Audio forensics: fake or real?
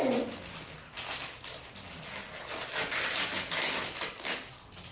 real